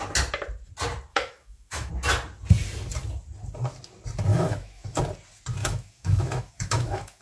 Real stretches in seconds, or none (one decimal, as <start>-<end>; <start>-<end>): 0.0-1.1; 1.9-4.3; 5.0-5.6